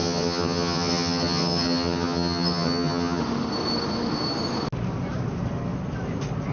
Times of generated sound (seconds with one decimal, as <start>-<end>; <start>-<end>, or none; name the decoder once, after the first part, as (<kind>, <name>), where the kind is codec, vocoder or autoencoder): 0.0-3.2 (vocoder, HiFi-GAN)